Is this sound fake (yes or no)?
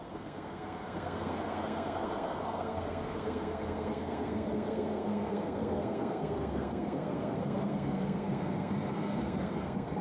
yes